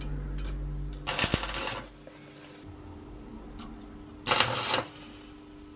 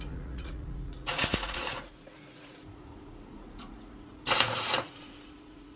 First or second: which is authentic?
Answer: first